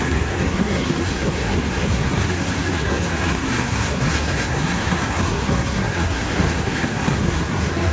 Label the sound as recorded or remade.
remade